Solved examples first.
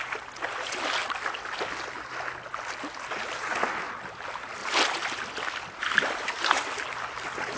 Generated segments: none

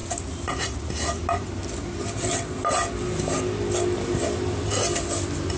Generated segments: none

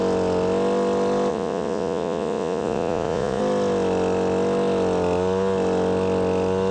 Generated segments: 1.3-3.4 (vocoder, Vocos)

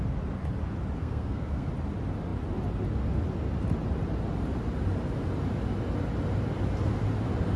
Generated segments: 1.0-1.7 (codec, SNAC)

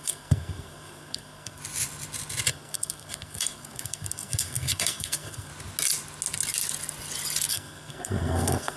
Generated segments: 0.0-1.6 (codec, SNAC); 2.5-5.5; 7.5-8.8